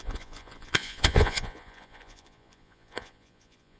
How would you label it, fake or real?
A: fake